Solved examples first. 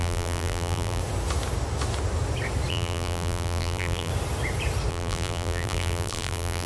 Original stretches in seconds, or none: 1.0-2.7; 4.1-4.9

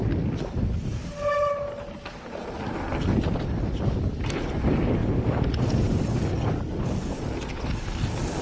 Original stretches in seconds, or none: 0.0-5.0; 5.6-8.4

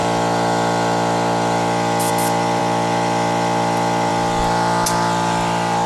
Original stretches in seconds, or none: 0.0-5.9

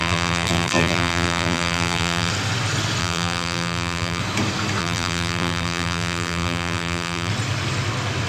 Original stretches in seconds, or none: 2.3-3.0; 4.2-4.8; 7.3-8.3